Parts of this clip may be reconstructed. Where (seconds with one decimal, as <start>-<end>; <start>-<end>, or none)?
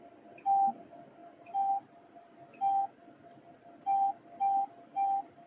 none